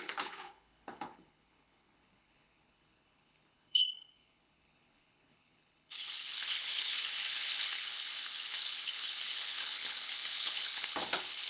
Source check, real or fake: fake